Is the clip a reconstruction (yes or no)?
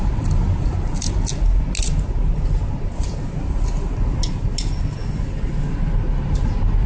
no